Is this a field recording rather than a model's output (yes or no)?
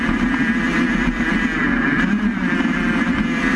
no